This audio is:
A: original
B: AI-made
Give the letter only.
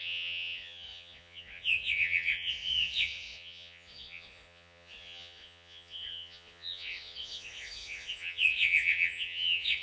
B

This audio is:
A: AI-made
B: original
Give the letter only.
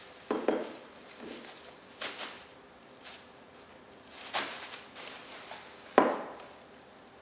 B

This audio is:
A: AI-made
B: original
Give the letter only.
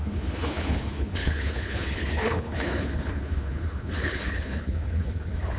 A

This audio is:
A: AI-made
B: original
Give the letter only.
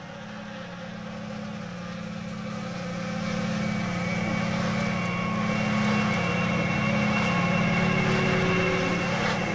B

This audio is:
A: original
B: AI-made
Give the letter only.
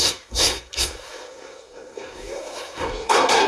B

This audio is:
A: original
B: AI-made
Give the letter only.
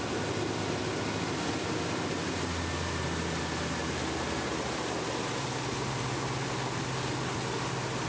A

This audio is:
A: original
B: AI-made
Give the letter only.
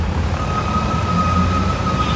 A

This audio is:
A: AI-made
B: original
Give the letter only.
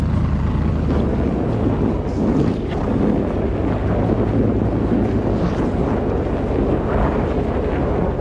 B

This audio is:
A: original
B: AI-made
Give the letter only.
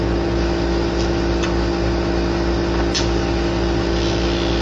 A